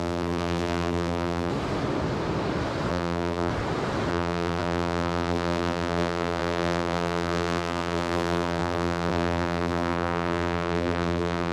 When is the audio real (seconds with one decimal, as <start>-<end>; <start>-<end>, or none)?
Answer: 1.5-2.9; 3.5-4.1